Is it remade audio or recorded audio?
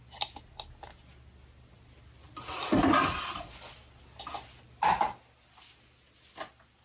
recorded